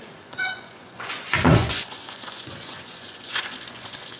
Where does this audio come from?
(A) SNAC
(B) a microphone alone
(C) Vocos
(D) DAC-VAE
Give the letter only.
C